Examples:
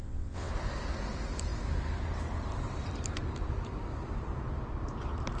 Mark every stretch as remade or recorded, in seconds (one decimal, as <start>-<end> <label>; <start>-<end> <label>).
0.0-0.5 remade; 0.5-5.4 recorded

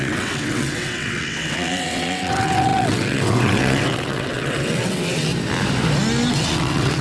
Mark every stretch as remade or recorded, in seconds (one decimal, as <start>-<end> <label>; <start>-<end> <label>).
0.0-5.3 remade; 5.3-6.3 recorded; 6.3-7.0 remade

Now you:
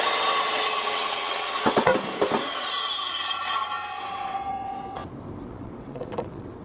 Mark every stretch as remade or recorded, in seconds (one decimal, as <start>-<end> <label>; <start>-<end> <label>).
0.0-1.9 remade; 1.9-4.0 recorded; 4.0-5.0 remade; 5.0-5.5 recorded; 5.5-6.6 remade